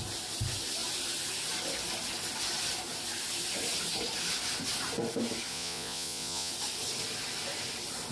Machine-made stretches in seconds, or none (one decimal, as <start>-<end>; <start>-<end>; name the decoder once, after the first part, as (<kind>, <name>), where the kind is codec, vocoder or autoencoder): 5.5-6.5 (vocoder, Vocos)